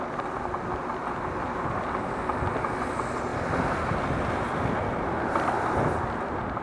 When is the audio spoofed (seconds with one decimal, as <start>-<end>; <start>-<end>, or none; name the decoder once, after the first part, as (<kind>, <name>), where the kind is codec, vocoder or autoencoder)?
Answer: none